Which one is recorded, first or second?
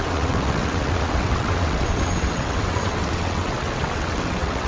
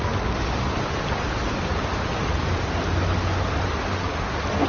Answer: second